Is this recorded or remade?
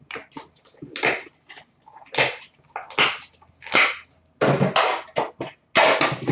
recorded